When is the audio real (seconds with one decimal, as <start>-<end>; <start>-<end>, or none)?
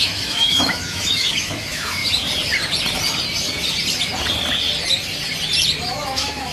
2.0-5.9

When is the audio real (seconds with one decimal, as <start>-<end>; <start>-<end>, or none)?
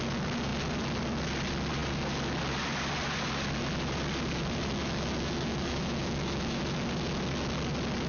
0.0-4.8; 6.6-8.1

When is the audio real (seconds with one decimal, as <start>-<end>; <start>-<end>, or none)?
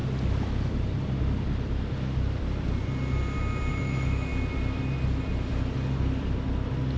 0.0-3.7; 4.3-7.0